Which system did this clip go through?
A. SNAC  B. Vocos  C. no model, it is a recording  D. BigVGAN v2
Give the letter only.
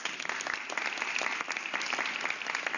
C